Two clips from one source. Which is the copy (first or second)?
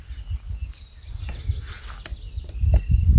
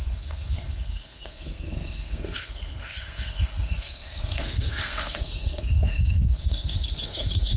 second